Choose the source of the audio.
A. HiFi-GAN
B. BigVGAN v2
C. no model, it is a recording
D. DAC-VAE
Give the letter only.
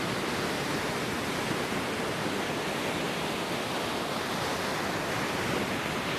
C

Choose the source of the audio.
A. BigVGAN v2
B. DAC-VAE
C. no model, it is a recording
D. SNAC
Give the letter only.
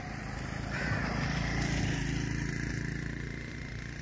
A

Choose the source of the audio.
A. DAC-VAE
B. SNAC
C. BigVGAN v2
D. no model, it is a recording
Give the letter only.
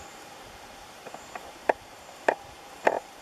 C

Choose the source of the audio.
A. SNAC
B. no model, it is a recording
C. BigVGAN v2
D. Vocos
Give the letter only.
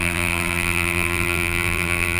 C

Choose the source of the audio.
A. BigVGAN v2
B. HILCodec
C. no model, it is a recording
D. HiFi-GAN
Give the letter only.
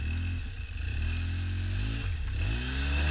C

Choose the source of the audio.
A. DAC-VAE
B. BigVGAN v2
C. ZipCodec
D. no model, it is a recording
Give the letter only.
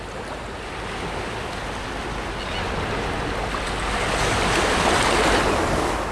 D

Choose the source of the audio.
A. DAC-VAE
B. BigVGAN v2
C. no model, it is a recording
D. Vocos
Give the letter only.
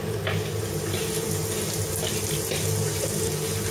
C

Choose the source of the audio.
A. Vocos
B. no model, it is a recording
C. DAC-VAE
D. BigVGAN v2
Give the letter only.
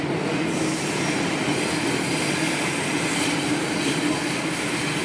B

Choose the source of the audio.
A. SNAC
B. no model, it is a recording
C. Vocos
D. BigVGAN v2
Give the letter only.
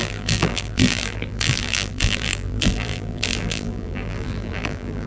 D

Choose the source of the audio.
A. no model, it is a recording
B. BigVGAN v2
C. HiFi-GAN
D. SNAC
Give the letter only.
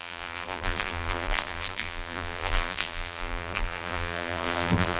B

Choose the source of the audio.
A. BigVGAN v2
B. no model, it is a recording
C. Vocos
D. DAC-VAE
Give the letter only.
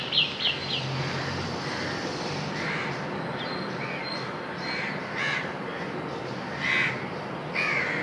B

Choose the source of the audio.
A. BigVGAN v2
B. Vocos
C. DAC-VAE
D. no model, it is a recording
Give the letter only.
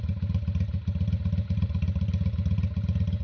D